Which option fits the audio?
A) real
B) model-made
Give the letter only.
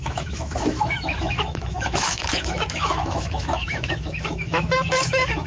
B